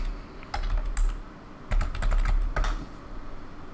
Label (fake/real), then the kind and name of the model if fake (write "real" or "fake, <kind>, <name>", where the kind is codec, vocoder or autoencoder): real